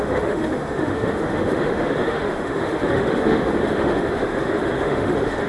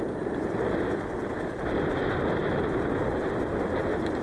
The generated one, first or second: first